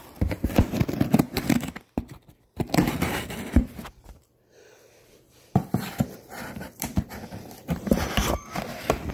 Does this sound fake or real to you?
fake